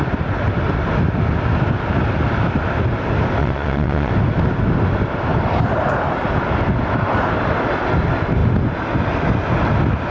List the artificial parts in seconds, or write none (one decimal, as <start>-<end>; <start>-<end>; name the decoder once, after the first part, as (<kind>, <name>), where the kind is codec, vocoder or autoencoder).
3.4-4.1 (vocoder, Vocos)